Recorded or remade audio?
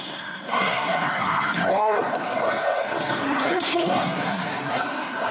remade